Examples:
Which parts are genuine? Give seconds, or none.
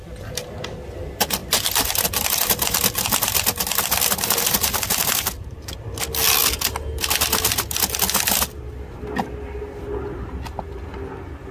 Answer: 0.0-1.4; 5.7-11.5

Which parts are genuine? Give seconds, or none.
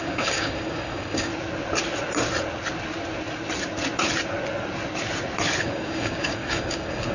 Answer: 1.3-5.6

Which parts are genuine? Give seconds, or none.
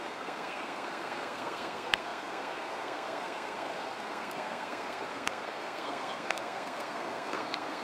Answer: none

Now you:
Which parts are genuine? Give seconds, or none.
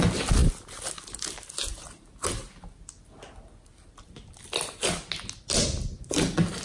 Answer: 0.0-6.6